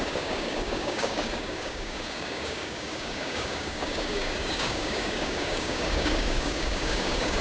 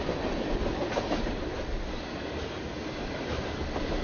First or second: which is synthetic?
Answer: first